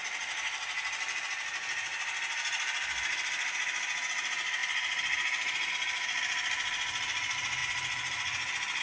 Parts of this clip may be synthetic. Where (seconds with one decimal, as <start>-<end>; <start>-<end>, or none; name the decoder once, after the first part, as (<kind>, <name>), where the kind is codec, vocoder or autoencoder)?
none